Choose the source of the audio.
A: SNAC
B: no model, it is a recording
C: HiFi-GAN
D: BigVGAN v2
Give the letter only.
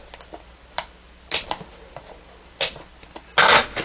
B